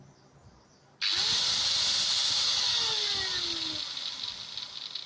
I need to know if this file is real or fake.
real